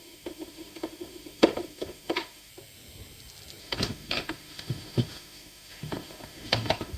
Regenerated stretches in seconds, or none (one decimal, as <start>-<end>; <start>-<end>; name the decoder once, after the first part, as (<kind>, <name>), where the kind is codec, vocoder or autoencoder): 0.0-2.5 (autoencoder, DAC-VAE); 3.6-7.0